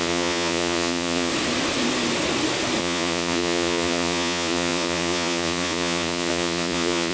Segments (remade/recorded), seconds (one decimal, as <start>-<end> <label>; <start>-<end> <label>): 0.0-1.3 remade; 1.3-2.8 recorded; 2.8-7.1 remade